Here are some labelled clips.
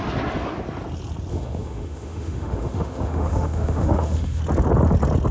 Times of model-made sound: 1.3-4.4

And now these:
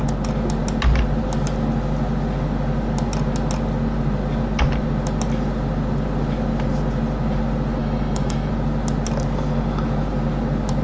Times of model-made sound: 7.8-8.5

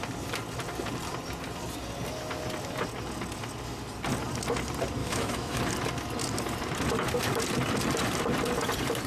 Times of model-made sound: 5.0-5.6